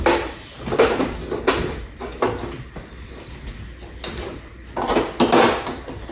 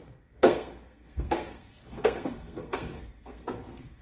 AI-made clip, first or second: second